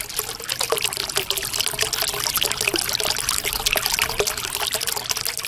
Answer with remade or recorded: recorded